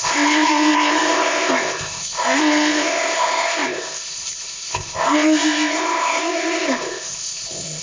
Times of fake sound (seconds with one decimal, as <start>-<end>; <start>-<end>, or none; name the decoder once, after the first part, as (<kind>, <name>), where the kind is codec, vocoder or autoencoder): 0.0-7.8 (codec, ZipCodec)